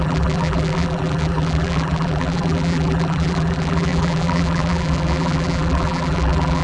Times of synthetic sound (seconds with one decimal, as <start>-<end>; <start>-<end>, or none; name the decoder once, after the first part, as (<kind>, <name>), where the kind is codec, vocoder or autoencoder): 0.0-6.6 (vocoder, BigVGAN v2)